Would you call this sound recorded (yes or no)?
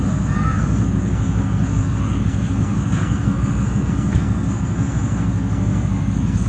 no